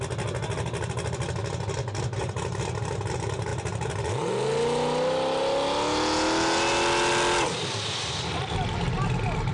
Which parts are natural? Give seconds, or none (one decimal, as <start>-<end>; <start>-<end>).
0.0-9.5